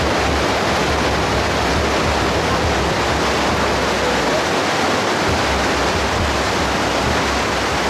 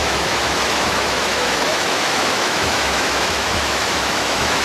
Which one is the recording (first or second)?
first